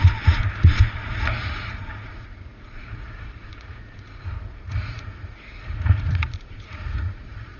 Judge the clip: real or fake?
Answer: fake